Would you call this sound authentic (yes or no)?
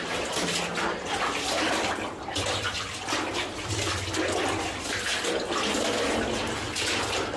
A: yes